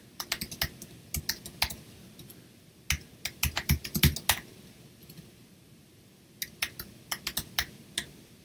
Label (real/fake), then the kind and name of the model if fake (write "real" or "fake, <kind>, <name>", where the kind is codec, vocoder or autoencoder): real